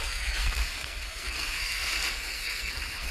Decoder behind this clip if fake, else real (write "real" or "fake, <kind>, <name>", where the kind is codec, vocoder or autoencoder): fake, codec, SNAC